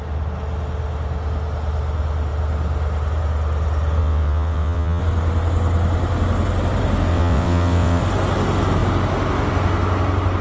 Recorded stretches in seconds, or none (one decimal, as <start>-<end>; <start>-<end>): 0.0-4.0; 5.0-7.1; 8.0-10.4